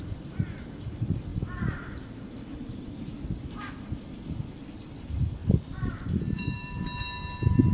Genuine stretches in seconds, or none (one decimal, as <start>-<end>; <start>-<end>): 0.0-1.3; 2.0-2.5; 3.1-5.4; 6.8-7.7